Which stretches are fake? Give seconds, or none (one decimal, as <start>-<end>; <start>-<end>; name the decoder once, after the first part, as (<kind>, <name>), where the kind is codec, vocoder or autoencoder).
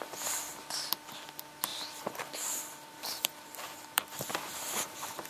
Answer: 1.7-5.3 (vocoder, BigVGAN v2)